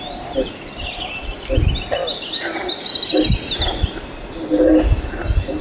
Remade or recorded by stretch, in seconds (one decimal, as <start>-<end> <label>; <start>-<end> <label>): 0.0-5.6 recorded